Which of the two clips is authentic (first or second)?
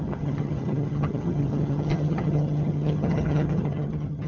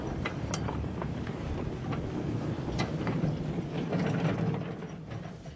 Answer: second